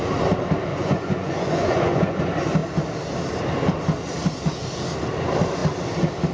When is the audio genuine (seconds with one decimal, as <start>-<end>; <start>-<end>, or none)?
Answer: 0.0-0.7; 2.2-6.3